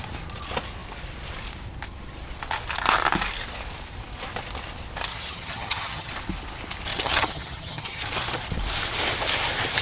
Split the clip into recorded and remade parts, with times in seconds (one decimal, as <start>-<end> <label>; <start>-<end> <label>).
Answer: 0.0-5.1 recorded; 5.1-6.1 remade; 6.1-6.9 recorded; 6.9-8.0 remade; 8.0-9.8 recorded